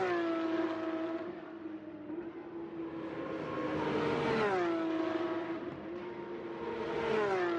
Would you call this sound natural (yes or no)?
yes